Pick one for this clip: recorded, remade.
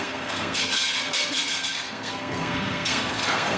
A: remade